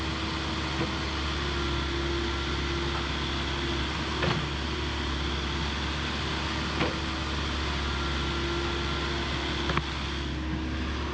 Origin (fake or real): real